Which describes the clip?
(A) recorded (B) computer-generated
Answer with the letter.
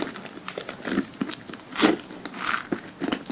A